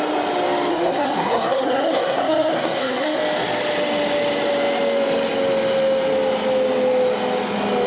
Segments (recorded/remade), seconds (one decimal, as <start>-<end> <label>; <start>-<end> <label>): 0.0-0.7 recorded; 0.7-3.2 remade; 3.2-7.9 recorded